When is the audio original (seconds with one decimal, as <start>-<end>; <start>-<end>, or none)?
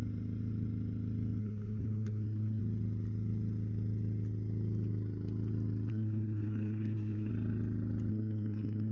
0.0-1.4; 2.6-5.9; 7.3-8.1